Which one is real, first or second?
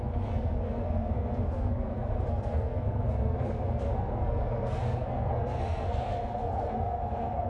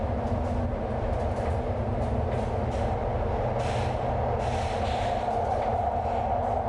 second